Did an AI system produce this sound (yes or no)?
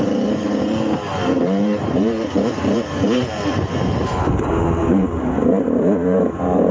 yes